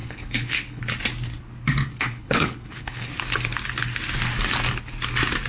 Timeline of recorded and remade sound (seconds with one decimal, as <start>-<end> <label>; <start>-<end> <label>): 0.0-0.8 remade; 0.8-1.9 recorded; 1.9-3.1 remade; 3.1-5.5 recorded